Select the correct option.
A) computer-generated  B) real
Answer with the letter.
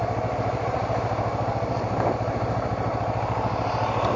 A